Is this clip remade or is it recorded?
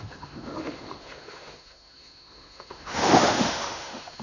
remade